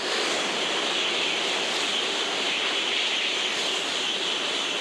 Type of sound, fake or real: real